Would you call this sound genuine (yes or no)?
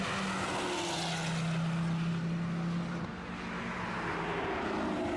yes